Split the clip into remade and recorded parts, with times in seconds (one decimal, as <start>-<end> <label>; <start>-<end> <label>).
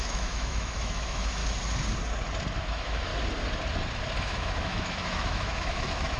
0.0-1.4 remade; 1.4-2.7 recorded; 2.7-3.1 remade; 3.1-4.2 recorded; 4.2-6.2 remade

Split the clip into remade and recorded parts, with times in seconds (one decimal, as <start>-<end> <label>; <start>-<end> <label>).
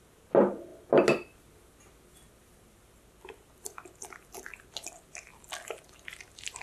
0.0-6.6 recorded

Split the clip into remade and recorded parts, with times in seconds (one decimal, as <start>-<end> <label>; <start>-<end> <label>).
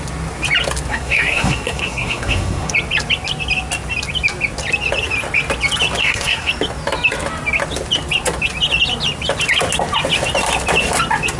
0.0-0.9 recorded; 0.9-2.7 remade; 2.7-6.0 recorded; 6.0-6.5 remade; 6.5-11.4 recorded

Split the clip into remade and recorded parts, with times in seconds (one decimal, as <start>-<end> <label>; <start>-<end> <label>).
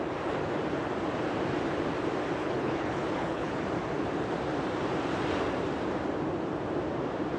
0.0-2.4 recorded; 2.4-3.6 remade; 3.6-7.4 recorded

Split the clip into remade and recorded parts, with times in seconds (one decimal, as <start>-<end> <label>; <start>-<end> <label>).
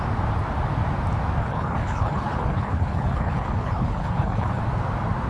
0.0-1.4 recorded; 1.4-4.6 remade; 4.6-5.3 recorded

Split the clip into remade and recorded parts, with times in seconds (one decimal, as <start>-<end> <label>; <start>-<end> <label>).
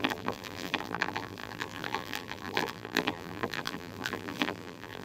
0.0-5.0 remade